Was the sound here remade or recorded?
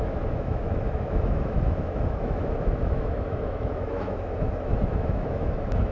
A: remade